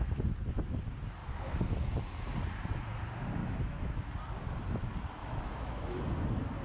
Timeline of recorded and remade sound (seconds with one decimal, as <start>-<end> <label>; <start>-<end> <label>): 0.0-3.4 recorded; 3.4-4.1 remade; 4.1-5.2 recorded; 5.2-6.0 remade; 6.0-6.6 recorded